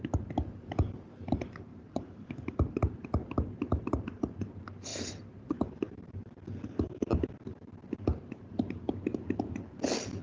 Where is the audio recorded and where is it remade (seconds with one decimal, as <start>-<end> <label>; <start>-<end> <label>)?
0.0-1.7 recorded; 1.7-4.5 remade; 4.5-4.9 recorded; 4.9-6.2 remade; 6.2-8.1 recorded; 8.1-9.2 remade; 9.2-10.2 recorded